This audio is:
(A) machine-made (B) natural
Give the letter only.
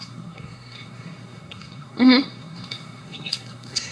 A